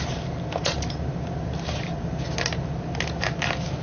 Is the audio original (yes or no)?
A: yes